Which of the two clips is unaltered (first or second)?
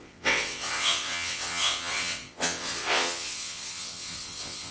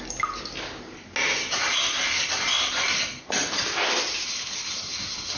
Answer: second